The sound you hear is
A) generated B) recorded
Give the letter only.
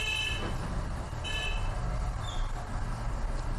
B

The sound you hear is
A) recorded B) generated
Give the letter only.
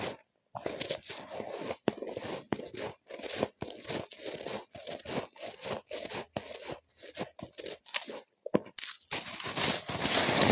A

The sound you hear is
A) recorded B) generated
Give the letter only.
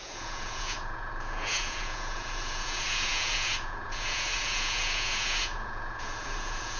B